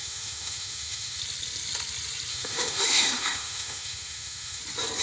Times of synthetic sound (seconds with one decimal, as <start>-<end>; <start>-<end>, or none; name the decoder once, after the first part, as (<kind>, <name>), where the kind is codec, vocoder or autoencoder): 0.0-1.2 (autoencoder, DAC-VAE); 2.3-4.6